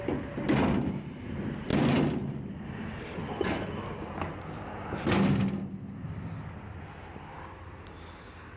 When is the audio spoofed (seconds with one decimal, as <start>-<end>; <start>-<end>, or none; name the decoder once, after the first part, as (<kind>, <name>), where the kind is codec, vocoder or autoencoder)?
none